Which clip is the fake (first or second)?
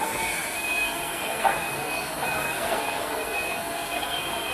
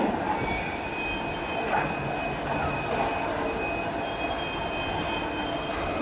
first